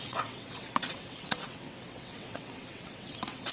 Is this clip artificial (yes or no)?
yes